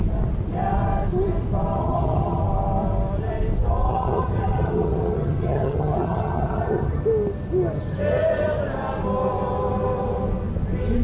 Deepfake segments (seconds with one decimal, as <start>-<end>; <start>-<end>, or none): 1.8-2.4; 3.9-7.0